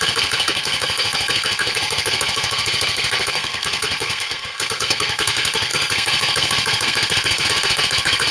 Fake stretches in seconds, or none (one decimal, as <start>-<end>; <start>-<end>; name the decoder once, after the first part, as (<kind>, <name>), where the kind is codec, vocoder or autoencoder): 0.0-8.3 (codec, SNAC)